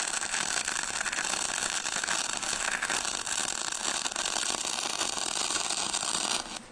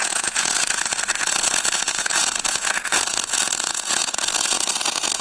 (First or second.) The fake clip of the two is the second